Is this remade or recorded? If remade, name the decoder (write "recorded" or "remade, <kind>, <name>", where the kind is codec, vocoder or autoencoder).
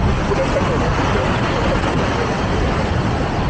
recorded